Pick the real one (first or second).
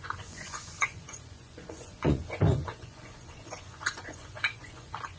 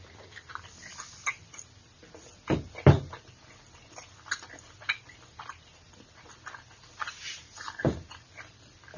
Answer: second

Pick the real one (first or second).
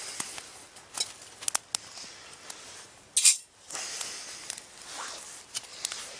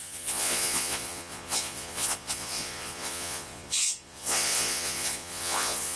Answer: first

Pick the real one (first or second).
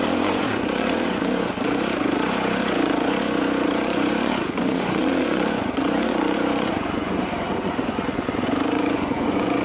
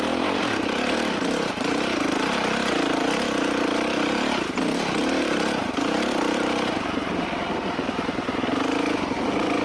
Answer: second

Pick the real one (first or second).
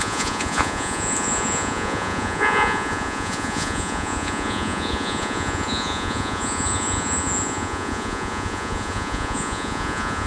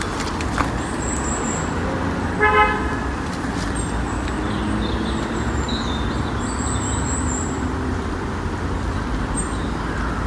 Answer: second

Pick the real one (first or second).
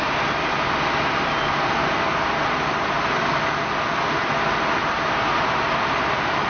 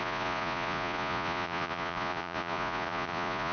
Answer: first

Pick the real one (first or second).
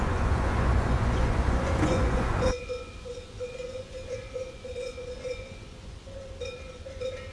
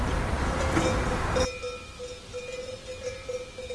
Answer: second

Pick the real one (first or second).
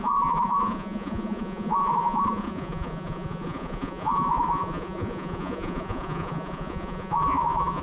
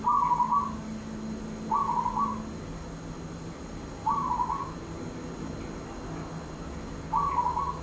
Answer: second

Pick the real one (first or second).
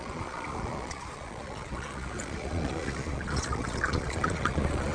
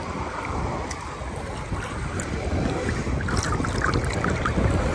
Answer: second